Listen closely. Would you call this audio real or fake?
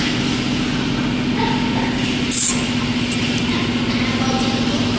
real